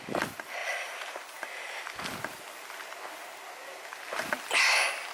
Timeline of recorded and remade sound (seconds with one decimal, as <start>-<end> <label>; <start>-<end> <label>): 0.0-0.6 recorded; 0.6-1.5 remade; 1.5-5.1 recorded